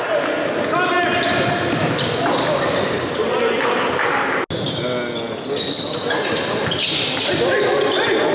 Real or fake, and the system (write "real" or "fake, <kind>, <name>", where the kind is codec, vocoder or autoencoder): real